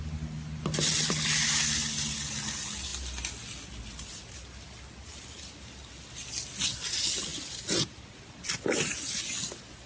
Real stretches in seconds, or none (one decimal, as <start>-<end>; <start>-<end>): 0.0-9.9